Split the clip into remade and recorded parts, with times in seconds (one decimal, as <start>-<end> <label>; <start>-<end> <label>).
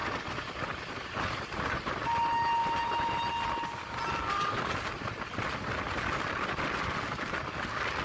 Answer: 0.0-2.0 remade; 2.0-2.6 recorded; 2.6-3.3 remade; 3.3-8.0 recorded